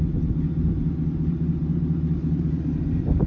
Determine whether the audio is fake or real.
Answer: real